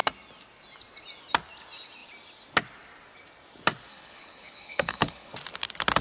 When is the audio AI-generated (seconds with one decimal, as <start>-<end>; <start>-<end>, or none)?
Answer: 3.9-5.3